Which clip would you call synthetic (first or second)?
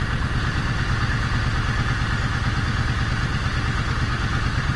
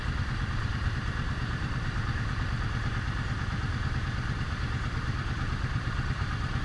second